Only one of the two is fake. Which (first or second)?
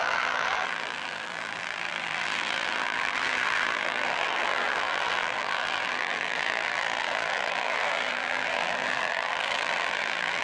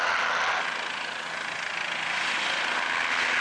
first